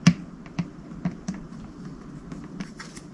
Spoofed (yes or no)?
no